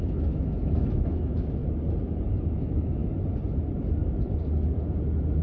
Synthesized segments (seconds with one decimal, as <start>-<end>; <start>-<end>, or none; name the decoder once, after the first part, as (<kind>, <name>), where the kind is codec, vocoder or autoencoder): 0.0-1.6 (autoencoder, DAC-VAE); 2.4-3.0